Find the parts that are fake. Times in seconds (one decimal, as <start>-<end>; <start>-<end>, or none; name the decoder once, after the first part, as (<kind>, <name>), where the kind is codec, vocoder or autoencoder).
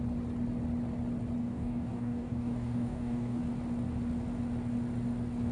1.4-3.4 (codec, DAC)